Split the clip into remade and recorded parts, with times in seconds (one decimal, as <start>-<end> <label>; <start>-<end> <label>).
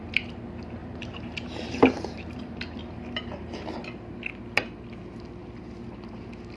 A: 0.0-0.8 recorded; 0.8-2.8 remade; 2.8-6.6 recorded